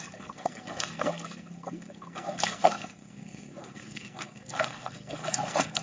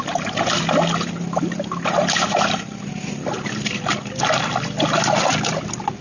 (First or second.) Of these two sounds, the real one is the second